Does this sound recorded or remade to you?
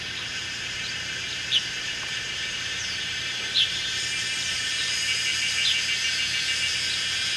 recorded